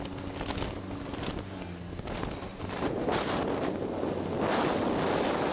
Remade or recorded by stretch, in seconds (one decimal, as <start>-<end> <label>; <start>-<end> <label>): 0.0-2.5 recorded; 2.5-3.2 remade; 3.2-5.5 recorded